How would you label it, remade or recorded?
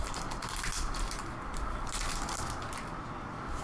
recorded